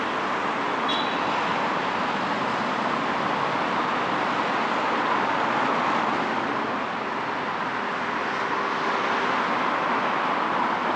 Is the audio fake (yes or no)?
no